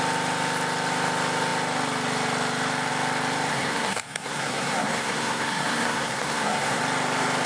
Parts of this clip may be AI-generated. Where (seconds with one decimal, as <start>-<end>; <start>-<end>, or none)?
3.5-6.8